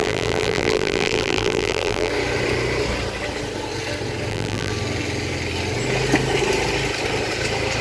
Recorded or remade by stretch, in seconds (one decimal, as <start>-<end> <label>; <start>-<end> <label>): 0.0-2.1 remade; 2.1-4.3 recorded; 4.3-4.7 remade; 4.7-7.8 recorded